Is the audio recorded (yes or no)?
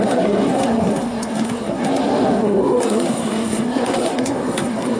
no